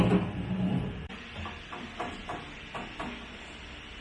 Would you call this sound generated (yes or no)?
no